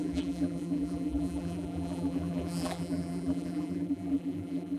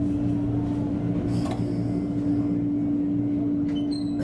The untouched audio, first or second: second